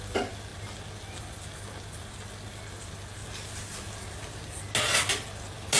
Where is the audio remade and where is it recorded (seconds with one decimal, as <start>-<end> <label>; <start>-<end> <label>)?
0.0-5.8 recorded